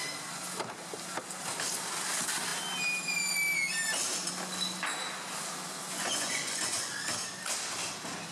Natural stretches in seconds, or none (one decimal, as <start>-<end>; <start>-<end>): 0.0-5.9; 6.9-8.3